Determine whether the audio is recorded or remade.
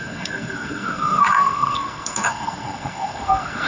remade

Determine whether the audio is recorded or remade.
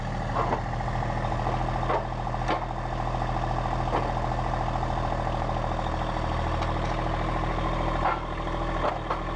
recorded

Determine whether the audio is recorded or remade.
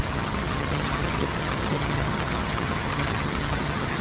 remade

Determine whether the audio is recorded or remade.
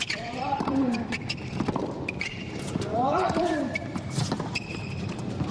remade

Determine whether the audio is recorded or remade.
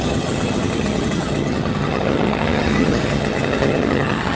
remade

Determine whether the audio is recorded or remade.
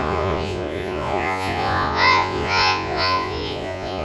remade